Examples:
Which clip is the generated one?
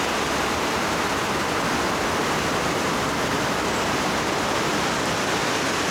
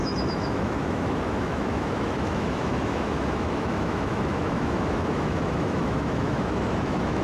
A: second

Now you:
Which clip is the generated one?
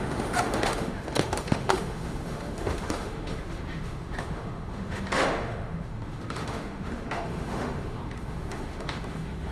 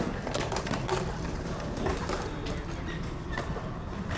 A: first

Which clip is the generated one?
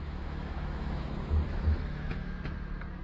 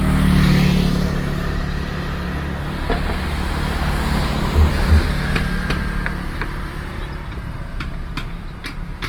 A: first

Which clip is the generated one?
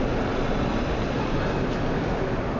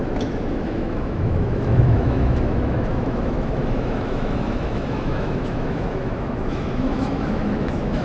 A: second